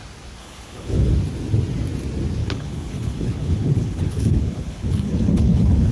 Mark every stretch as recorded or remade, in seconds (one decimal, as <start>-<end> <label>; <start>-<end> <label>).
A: 0.0-0.4 recorded; 0.4-1.1 remade; 1.1-2.4 recorded; 2.4-5.9 remade